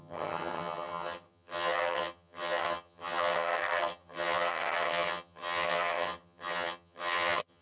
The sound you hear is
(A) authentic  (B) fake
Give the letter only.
B